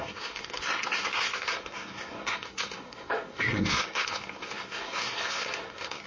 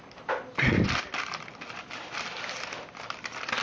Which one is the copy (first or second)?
first